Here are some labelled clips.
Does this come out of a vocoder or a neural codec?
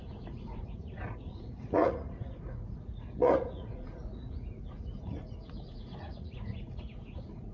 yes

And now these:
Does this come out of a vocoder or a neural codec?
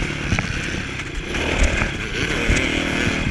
no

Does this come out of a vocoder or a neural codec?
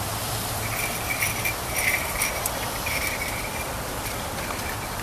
yes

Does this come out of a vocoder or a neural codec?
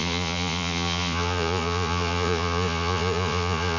yes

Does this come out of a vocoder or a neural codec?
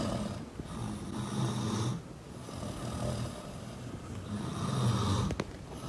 no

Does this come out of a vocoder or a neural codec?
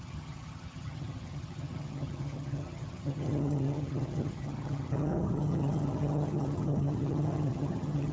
yes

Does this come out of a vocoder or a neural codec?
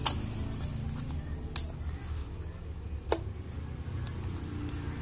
no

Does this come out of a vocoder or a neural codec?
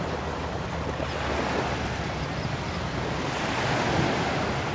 no